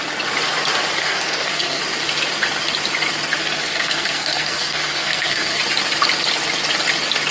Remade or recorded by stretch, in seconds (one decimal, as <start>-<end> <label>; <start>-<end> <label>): 0.0-1.0 recorded; 1.0-1.8 remade; 1.8-3.4 recorded; 3.4-5.6 remade; 5.6-7.3 recorded